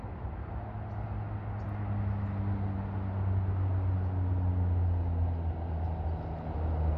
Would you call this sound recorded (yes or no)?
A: yes